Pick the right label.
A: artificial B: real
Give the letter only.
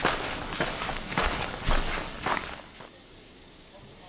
A